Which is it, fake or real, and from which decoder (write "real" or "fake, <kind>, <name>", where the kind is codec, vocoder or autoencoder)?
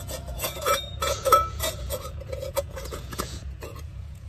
fake, vocoder, Vocos